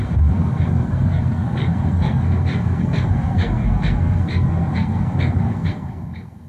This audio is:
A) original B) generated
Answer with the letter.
B